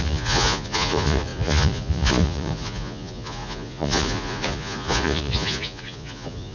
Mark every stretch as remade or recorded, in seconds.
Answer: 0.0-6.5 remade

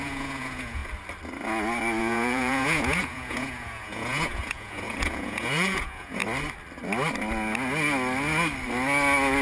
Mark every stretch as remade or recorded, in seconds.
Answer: 0.0-0.8 remade; 0.8-2.0 recorded; 2.0-6.2 remade; 6.2-9.4 recorded

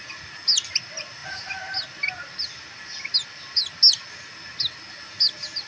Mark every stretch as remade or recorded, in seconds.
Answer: 0.0-5.7 recorded

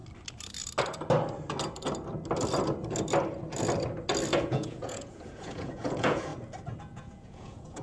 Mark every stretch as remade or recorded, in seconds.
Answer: 0.0-4.4 recorded; 4.4-6.3 remade; 6.3-6.8 recorded; 6.8-7.8 remade

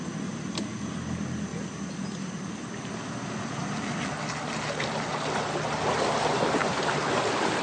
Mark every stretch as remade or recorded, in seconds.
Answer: 0.0-7.6 recorded